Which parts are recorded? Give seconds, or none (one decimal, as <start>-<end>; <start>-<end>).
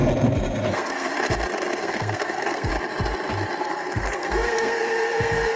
0.0-0.7; 1.1-1.8; 2.7-3.6